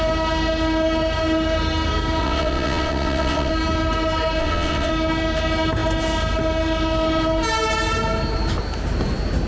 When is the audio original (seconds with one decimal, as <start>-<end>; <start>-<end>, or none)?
0.0-2.2; 3.5-4.4; 4.9-9.5